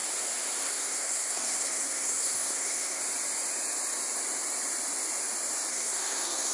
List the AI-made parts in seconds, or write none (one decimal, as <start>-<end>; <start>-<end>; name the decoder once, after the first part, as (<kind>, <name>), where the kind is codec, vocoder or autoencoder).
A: 0.6-3.0 (codec, SNAC); 5.7-6.5